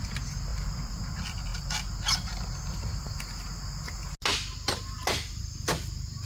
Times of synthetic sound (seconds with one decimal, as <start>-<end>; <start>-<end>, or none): 0.5-1.0